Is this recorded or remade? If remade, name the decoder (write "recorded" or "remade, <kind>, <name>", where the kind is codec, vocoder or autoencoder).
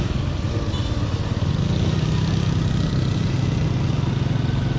recorded